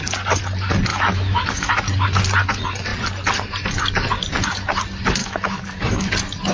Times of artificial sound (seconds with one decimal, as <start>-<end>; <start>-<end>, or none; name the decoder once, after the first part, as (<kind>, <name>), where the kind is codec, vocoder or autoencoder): 0.9-1.7 (autoencoder, DAC-VAE); 5.2-6.1